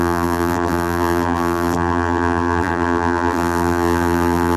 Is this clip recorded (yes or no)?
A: no